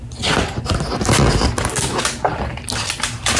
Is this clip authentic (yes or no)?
yes